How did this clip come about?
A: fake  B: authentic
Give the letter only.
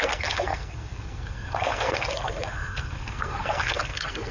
A